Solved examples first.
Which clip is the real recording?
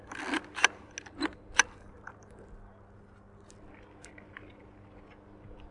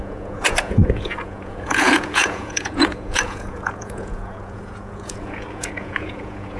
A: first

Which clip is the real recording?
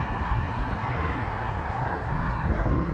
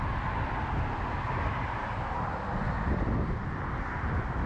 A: second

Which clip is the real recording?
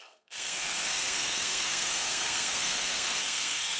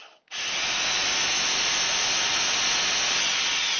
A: second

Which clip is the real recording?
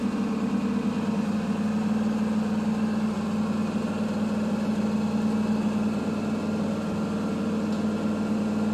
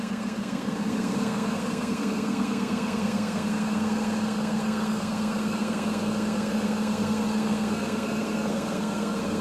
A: first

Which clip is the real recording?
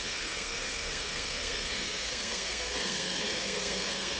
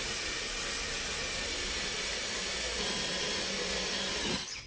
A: second